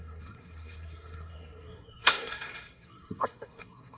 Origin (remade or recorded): remade